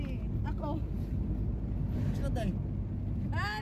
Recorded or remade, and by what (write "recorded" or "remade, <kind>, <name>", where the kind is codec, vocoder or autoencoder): recorded